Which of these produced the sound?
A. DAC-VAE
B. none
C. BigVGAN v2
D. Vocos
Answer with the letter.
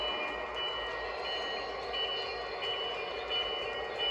B